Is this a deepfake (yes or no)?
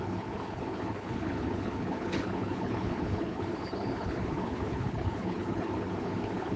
yes